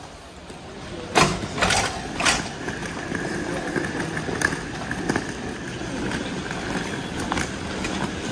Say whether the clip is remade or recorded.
recorded